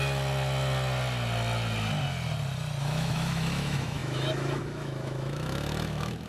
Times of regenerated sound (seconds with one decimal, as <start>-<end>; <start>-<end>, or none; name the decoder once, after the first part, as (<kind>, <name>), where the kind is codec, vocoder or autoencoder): 2.8-6.3 (autoencoder, DAC-VAE)